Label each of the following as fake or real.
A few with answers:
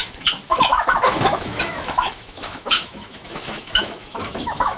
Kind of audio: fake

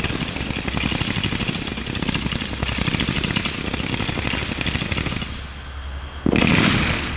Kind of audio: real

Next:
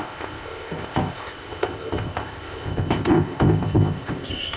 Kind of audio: fake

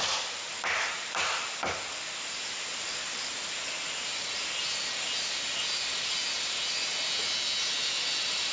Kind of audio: real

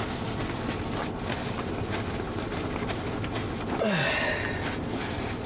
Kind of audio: real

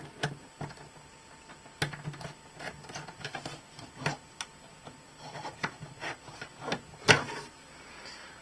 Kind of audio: real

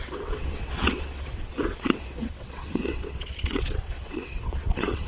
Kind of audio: fake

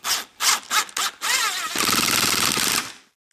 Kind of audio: real